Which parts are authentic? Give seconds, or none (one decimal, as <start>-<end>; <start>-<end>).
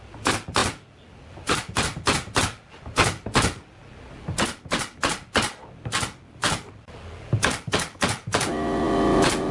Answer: 0.0-9.5